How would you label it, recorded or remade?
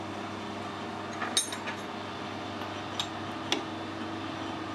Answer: recorded